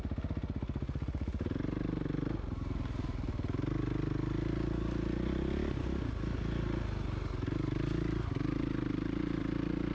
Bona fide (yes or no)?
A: yes